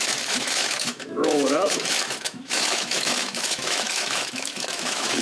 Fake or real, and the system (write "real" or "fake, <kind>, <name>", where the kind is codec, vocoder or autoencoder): fake, autoencoder, DAC-VAE